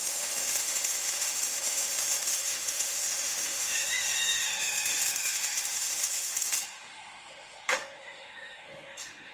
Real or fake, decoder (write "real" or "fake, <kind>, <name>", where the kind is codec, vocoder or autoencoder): fake, autoencoder, DAC-VAE